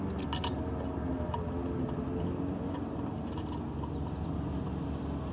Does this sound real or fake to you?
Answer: real